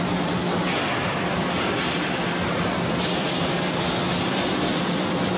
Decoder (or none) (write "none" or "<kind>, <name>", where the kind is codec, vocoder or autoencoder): vocoder, BigVGAN v2